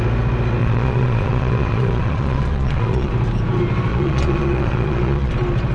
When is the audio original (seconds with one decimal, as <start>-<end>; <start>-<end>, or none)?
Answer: 0.0-0.6; 3.1-3.9; 5.3-5.7